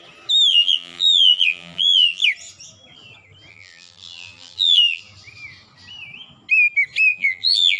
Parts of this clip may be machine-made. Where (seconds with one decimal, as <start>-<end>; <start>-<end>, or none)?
0.5-2.2; 3.5-5.0; 7.1-7.8